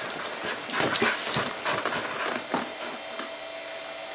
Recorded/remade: remade